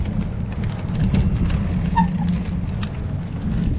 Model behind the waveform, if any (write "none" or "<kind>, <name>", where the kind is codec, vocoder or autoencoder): none